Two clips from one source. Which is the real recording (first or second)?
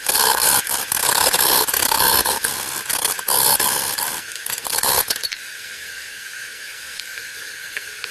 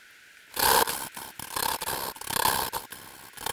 second